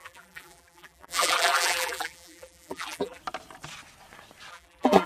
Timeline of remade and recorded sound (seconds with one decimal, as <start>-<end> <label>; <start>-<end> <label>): 0.0-3.2 remade; 3.2-4.5 recorded; 4.5-5.1 remade